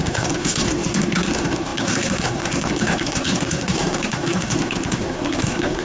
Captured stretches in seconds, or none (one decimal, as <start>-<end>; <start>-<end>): none